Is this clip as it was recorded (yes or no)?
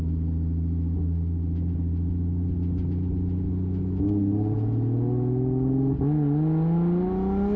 yes